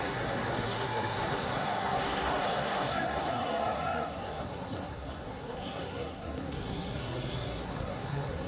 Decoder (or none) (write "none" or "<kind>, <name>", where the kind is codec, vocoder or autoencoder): codec, SNAC